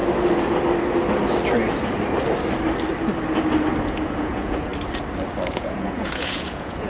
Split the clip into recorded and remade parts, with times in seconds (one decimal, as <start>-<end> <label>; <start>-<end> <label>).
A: 0.0-3.9 recorded; 3.9-4.7 remade; 4.7-5.5 recorded; 5.5-6.9 remade